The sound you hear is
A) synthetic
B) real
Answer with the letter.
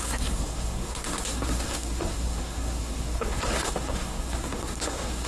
A